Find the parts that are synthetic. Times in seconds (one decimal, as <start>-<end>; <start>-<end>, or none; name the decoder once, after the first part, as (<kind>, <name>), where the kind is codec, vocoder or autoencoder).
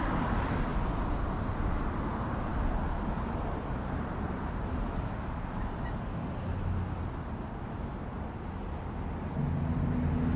none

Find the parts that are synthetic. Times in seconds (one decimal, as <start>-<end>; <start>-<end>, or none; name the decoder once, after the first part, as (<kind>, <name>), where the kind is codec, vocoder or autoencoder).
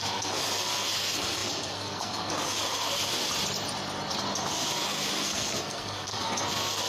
0.0-3.2 (codec, SNAC); 4.5-6.9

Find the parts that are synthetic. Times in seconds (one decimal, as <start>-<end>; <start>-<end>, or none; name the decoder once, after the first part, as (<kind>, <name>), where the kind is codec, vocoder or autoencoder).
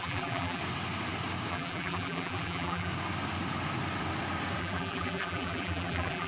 0.0-0.6 (vocoder, BigVGAN v2); 1.5-2.9; 4.6-6.3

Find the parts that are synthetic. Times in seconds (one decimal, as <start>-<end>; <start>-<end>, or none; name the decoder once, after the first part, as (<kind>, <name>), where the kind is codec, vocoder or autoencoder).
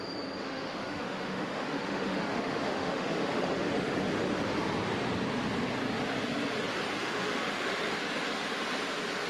0.4-3.9 (autoencoder, DAC-VAE); 7.0-8.0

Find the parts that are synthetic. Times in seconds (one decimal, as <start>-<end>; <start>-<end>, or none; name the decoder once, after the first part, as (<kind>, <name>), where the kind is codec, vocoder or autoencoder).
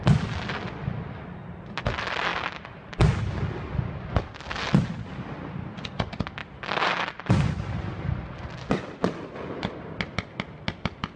none